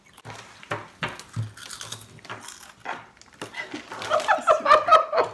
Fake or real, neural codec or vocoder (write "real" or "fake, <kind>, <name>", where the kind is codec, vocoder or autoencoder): real